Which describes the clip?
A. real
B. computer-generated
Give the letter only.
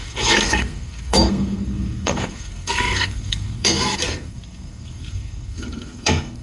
B